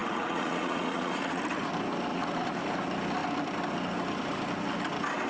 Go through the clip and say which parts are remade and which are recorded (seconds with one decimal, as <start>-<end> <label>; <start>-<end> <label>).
0.0-1.4 remade; 1.4-2.1 recorded; 2.1-2.6 remade; 2.6-5.3 recorded